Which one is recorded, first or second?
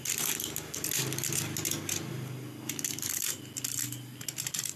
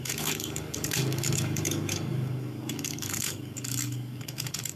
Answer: first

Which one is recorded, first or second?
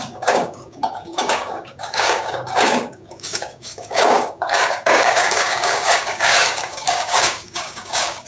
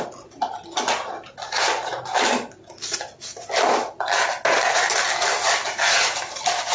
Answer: second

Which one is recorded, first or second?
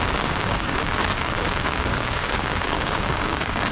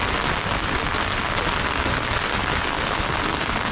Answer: second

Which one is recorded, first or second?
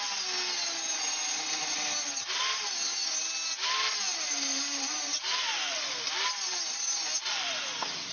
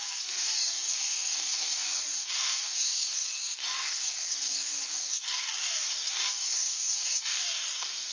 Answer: first